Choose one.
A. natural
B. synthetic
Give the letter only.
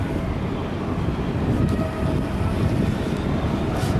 A